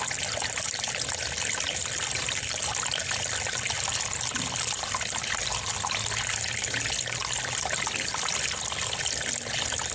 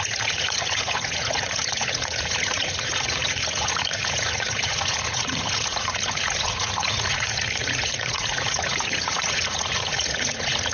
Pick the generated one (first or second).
second